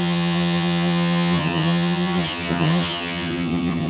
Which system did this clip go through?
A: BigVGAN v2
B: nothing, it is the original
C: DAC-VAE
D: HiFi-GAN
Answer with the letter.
D